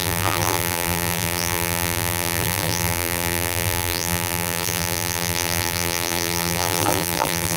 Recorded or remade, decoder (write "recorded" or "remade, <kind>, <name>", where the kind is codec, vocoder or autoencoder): remade, vocoder, BigVGAN v2